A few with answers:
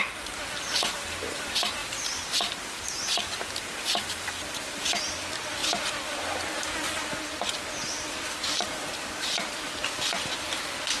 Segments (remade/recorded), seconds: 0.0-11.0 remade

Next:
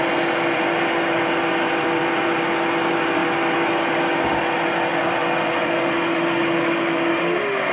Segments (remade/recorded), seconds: 0.0-6.4 recorded; 6.4-7.1 remade; 7.1-7.7 recorded

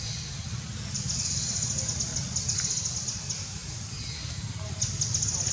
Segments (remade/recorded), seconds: 0.0-5.5 recorded

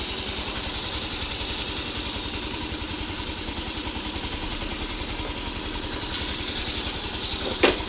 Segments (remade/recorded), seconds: 0.0-0.8 recorded; 0.8-4.2 remade; 4.2-7.9 recorded